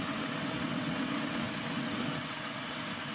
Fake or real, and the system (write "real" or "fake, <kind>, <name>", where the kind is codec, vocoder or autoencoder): fake, vocoder, WaveNeXt